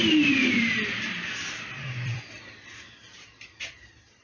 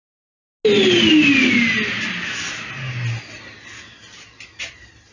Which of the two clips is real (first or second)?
second